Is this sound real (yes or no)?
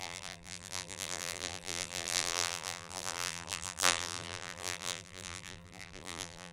no